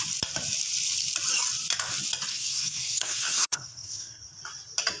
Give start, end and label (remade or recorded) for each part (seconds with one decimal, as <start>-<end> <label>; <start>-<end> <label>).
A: 0.0-2.3 recorded; 2.3-4.2 remade; 4.2-5.0 recorded